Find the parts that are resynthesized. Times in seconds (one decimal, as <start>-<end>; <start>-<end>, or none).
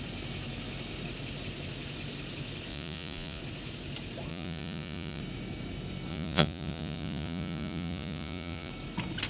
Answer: 2.7-3.4; 4.3-5.2; 6.1-8.7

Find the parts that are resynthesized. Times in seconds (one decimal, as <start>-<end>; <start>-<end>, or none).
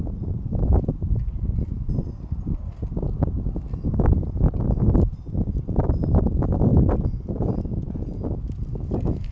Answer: none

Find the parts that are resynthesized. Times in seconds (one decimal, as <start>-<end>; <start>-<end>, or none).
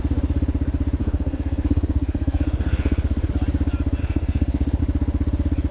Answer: 1.0-3.3; 4.0-4.8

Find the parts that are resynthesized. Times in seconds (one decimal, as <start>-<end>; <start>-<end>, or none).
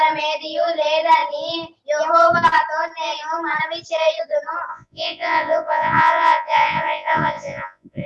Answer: 4.7-8.1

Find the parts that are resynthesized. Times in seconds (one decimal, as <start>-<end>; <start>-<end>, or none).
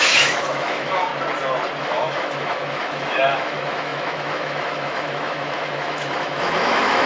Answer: 0.0-1.1; 1.8-7.1